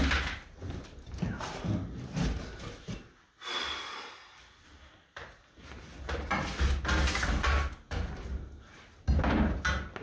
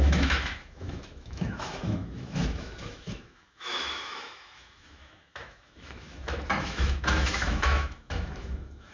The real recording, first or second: first